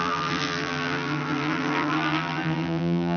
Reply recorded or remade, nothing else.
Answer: remade